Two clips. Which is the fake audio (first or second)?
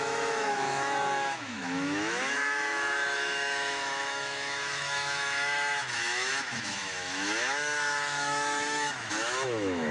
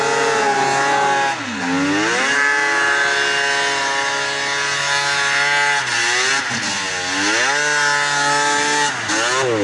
first